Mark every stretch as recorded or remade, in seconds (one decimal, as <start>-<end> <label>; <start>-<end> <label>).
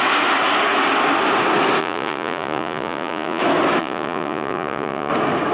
0.0-1.8 recorded; 1.8-3.4 remade; 3.4-3.8 recorded; 3.8-5.1 remade; 5.1-5.5 recorded